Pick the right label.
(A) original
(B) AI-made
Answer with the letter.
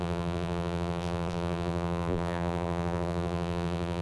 B